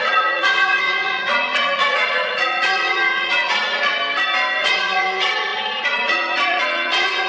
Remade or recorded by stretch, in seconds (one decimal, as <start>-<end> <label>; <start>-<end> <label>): 0.0-4.0 remade; 4.0-4.6 recorded; 4.6-7.3 remade